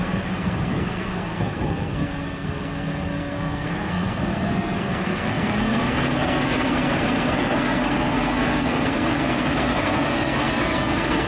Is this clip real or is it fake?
fake